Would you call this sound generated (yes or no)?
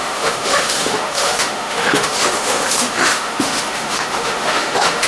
yes